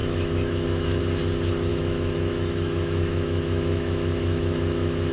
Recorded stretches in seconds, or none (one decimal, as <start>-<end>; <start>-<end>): 1.0-1.7